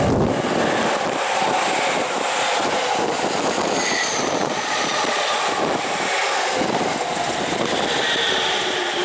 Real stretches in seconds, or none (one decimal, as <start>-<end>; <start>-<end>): 0.0-4.4; 5.4-9.0

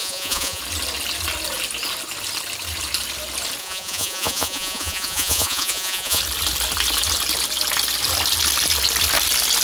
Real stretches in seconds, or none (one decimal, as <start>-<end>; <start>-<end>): 0.6-3.6; 6.2-9.6